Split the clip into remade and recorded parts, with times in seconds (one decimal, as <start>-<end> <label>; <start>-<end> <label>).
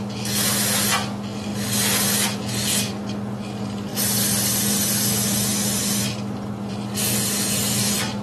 0.0-8.2 recorded